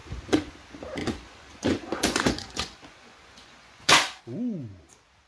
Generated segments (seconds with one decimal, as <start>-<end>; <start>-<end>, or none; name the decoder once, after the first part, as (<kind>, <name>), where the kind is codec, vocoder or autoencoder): 0.0-0.5 (vocoder, Vocos); 1.0-4.2